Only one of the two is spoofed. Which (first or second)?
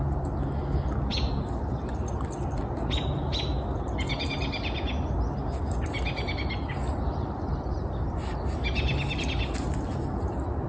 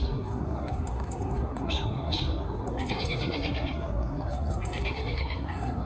second